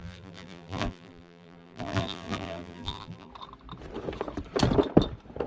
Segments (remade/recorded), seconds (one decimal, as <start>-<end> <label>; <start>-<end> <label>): 0.0-3.3 remade; 3.3-5.5 recorded

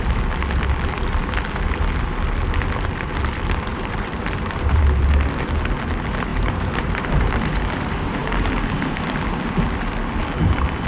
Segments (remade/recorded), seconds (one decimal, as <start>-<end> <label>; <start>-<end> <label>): 0.0-3.7 recorded; 3.7-4.8 remade; 4.8-6.3 recorded; 6.3-7.3 remade; 7.3-10.9 recorded

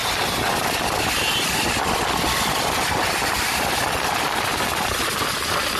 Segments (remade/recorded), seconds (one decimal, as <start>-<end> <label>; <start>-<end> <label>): 0.0-1.0 recorded; 1.0-5.8 remade

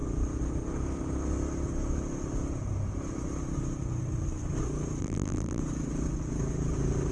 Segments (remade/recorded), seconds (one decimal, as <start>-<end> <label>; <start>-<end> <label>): 0.0-5.0 recorded; 5.0-5.6 remade; 5.6-7.1 recorded

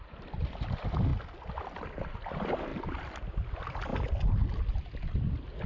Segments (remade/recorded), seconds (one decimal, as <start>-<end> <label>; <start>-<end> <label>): 0.0-1.1 remade; 1.1-2.2 recorded; 2.2-2.7 remade; 2.7-3.5 recorded; 3.5-3.9 remade; 3.9-5.7 recorded

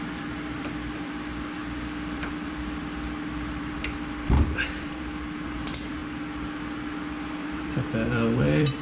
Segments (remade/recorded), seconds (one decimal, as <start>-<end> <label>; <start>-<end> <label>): 0.0-6.0 remade; 6.0-7.3 recorded; 7.3-8.8 remade